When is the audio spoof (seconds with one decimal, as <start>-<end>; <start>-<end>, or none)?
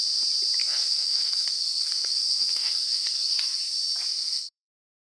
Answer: 0.6-3.6; 4.1-5.0